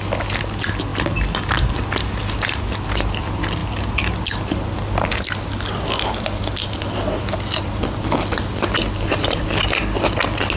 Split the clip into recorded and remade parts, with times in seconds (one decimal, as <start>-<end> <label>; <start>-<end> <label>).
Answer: 0.0-10.6 recorded